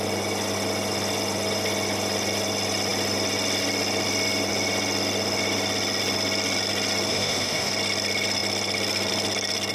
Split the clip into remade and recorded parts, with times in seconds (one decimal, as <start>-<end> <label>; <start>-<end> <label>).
0.0-7.1 recorded; 7.1-7.7 remade; 7.7-9.7 recorded